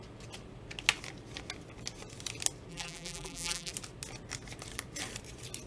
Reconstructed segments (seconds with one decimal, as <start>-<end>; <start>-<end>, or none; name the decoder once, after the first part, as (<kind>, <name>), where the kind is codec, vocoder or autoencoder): 2.7-3.7 (vocoder, BigVGAN v2)